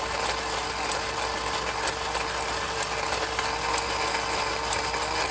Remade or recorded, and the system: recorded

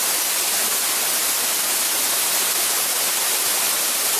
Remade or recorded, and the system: recorded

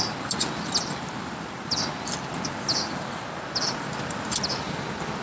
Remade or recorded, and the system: recorded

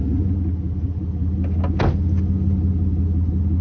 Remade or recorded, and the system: recorded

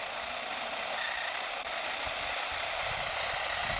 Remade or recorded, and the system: recorded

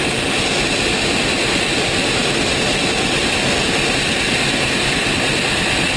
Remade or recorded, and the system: recorded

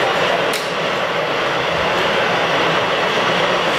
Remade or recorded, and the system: remade, vocoder, BigVGAN v2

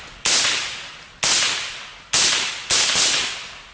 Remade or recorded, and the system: recorded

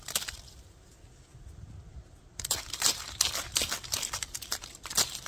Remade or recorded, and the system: recorded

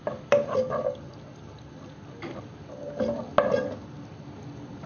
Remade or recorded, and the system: recorded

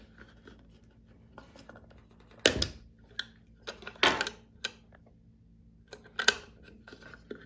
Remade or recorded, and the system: recorded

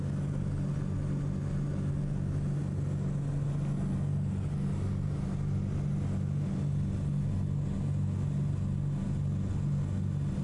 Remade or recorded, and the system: recorded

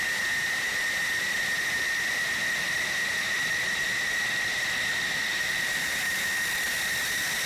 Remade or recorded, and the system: recorded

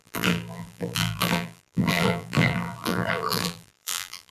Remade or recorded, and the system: remade, vocoder, BigVGAN v2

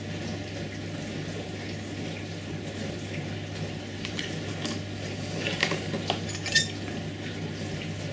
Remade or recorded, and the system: recorded